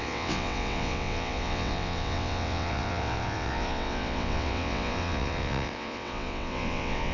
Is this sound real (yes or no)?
no